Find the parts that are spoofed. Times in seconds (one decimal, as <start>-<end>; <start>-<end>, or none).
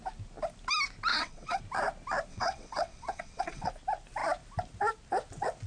1.1-1.6; 2.3-3.7